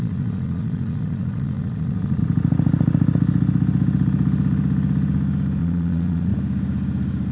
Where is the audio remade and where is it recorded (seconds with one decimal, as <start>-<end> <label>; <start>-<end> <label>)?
0.0-2.2 remade; 2.2-5.6 recorded; 5.6-6.3 remade; 6.3-7.3 recorded